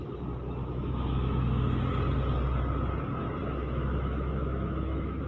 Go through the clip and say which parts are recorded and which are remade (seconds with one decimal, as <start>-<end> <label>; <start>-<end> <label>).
0.0-0.6 recorded; 0.6-1.8 remade; 1.8-3.4 recorded; 3.4-5.3 remade